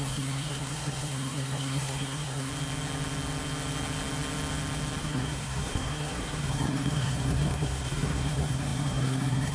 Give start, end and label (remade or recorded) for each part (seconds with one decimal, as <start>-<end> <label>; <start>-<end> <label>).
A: 0.0-2.5 remade; 2.5-5.0 recorded; 5.0-9.5 remade